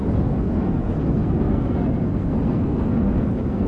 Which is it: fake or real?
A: fake